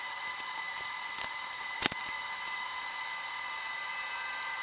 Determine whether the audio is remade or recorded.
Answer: remade